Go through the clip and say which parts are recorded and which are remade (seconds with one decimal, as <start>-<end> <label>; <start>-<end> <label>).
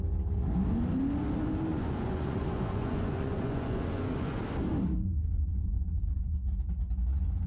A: 0.0-1.7 recorded; 1.7-4.4 remade; 4.4-5.2 recorded; 5.2-6.2 remade; 6.2-7.5 recorded